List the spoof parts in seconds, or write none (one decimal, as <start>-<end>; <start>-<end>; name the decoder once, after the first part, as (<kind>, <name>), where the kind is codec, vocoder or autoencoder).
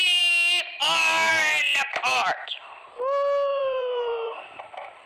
0.0-2.6 (vocoder, BigVGAN v2); 3.5-5.1